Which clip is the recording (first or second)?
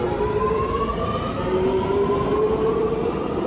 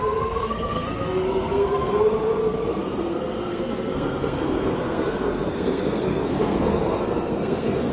first